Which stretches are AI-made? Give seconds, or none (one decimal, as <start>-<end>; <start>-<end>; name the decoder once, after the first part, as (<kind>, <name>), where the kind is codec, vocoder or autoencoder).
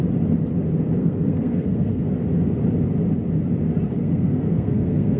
1.0-2.0 (codec, SNAC); 4.0-5.2